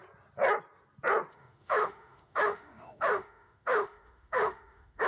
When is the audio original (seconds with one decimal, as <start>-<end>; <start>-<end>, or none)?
0.0-1.3